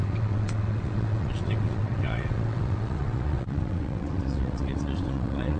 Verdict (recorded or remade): remade